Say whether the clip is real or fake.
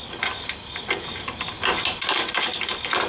real